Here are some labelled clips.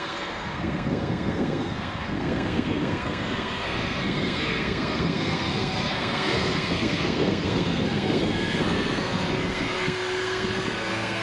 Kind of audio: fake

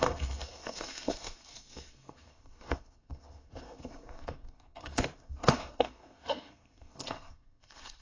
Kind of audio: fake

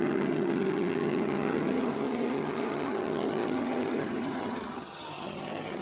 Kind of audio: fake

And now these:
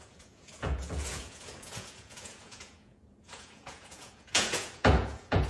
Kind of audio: fake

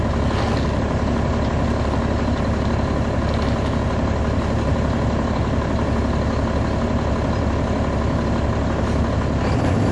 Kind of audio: real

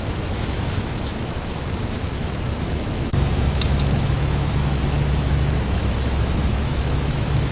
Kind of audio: fake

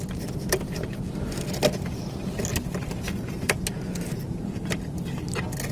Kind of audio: real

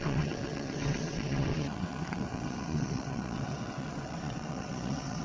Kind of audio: fake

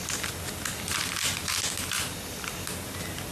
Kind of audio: real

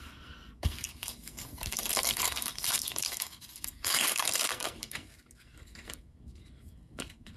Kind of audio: fake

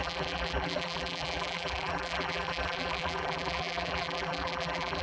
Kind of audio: fake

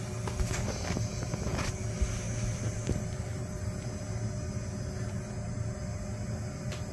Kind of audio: real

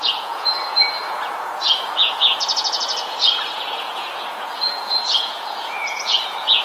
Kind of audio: fake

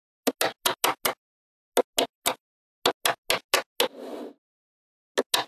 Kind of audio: real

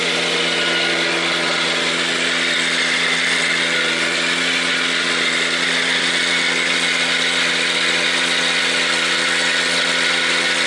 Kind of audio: real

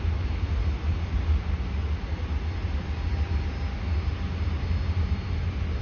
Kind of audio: real